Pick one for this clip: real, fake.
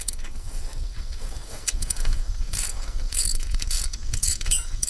fake